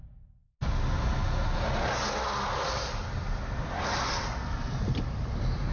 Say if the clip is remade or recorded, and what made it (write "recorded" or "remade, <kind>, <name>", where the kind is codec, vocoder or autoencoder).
recorded